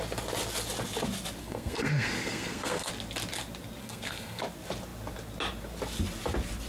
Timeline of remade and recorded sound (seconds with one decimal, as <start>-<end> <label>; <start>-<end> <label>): 0.0-1.4 recorded; 1.4-2.9 remade; 2.9-3.8 recorded; 3.8-4.4 remade; 4.4-6.7 recorded